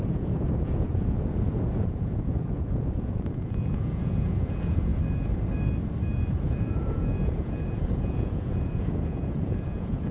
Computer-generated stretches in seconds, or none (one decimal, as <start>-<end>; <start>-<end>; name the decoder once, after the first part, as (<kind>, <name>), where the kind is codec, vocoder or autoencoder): 0.0-4.9 (vocoder, Vocos); 6.4-10.1